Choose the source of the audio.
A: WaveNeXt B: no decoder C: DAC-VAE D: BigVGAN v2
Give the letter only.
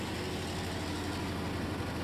B